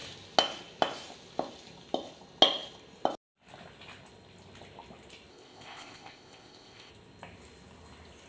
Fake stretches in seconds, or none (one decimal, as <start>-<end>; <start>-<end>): 5.3-6.9

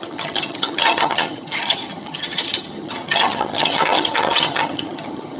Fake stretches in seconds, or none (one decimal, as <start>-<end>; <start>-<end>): 0.0-5.4